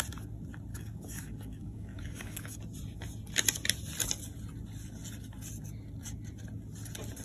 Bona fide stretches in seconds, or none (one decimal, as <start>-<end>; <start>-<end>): 0.0-0.7; 2.6-7.2